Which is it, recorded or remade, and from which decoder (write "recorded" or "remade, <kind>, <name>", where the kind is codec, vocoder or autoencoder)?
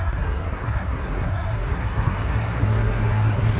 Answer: remade, codec, SNAC